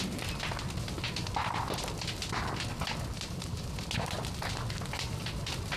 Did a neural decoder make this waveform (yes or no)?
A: no